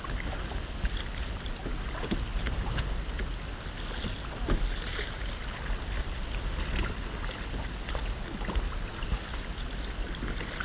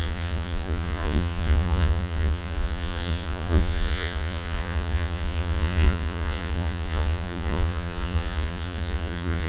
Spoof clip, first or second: second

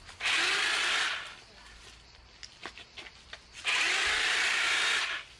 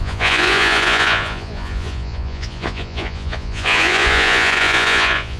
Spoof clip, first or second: second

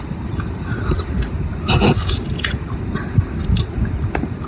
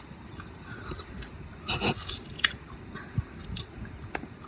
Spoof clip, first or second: first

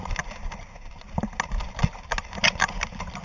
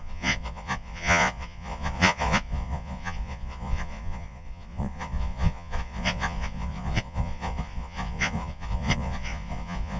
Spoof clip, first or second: second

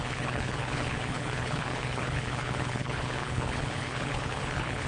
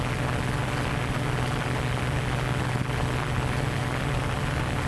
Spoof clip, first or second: first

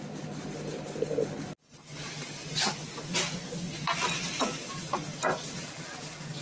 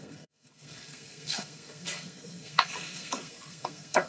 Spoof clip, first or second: second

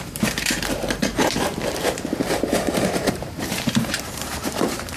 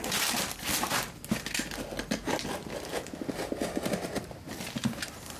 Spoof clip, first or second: first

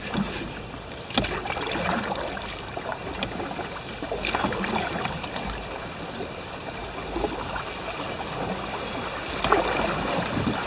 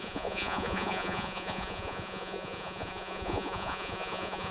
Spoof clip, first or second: second